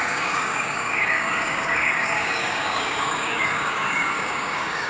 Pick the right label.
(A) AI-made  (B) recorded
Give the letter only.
A